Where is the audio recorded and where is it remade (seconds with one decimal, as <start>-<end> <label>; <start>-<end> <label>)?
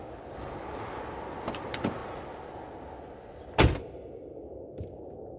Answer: 0.0-5.4 recorded